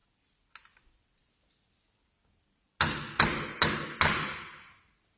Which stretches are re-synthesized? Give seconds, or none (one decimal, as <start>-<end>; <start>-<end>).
none